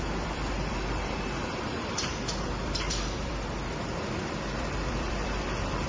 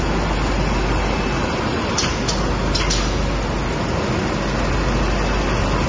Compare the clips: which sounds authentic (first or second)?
second